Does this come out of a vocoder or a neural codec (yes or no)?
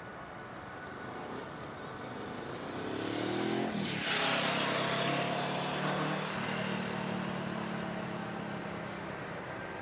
no